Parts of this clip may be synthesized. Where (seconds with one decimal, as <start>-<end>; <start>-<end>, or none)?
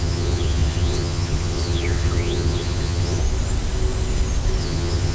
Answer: 0.0-3.2; 4.6-5.1